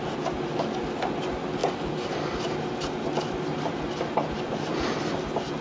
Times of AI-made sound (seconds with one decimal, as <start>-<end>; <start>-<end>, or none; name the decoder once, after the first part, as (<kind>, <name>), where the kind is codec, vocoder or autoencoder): none